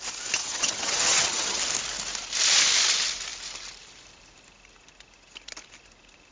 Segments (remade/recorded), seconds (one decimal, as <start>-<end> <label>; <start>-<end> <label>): 0.0-0.4 recorded; 0.4-1.6 remade; 1.6-6.3 recorded

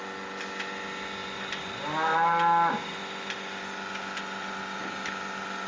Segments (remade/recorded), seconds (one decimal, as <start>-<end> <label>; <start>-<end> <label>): 0.0-5.7 recorded

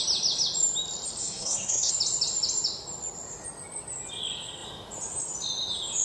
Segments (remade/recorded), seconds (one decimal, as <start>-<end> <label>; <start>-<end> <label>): 0.0-1.2 recorded; 1.2-1.9 remade; 1.9-6.0 recorded

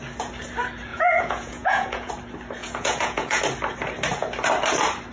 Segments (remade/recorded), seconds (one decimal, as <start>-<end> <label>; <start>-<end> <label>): 0.0-0.9 recorded; 0.9-2.1 remade; 2.1-2.6 recorded; 2.6-3.4 remade; 3.4-5.1 recorded